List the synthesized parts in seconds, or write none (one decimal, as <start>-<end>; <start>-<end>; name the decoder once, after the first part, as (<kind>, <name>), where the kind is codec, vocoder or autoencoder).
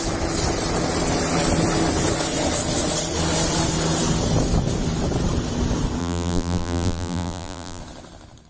6.0-7.8 (vocoder, BigVGAN v2)